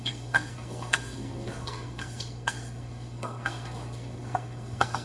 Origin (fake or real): fake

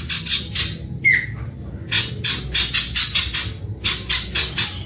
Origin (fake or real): real